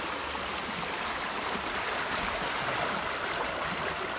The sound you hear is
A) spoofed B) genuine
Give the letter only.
A